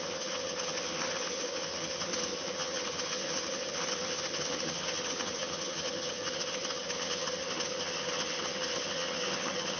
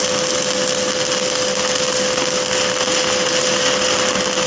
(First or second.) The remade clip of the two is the first